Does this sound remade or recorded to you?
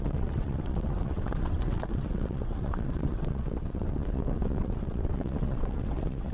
remade